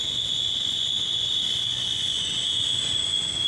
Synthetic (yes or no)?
yes